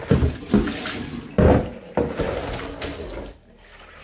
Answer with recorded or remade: recorded